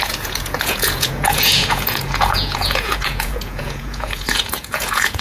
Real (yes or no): no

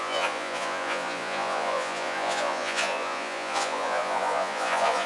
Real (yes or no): no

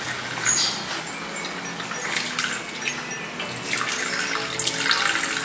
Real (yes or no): yes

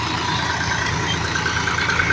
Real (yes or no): yes